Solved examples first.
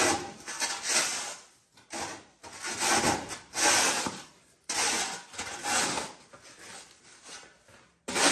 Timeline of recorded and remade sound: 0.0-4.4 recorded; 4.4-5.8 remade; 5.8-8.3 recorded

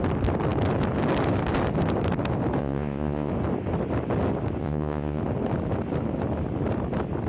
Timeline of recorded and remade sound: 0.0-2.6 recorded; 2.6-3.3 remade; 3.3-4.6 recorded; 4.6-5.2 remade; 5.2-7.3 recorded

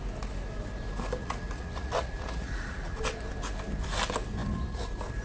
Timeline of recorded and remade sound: 0.0-1.2 recorded; 1.2-3.0 remade; 3.0-5.2 recorded

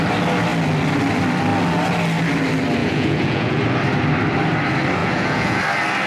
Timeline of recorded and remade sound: 0.0-2.8 recorded; 2.8-3.6 remade; 3.6-5.0 recorded; 5.0-5.6 remade; 5.6-6.1 recorded

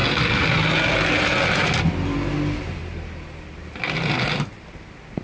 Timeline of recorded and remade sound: 0.0-5.2 recorded